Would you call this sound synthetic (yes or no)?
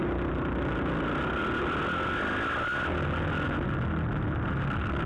no